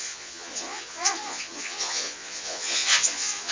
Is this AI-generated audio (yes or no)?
yes